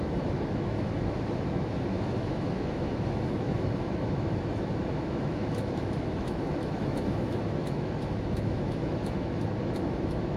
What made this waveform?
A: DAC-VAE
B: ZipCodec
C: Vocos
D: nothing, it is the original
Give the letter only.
A